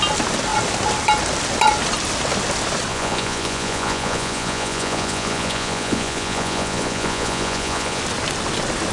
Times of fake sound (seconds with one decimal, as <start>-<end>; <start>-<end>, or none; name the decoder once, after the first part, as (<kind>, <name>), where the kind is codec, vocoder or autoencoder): 2.9-8.0 (vocoder, Vocos)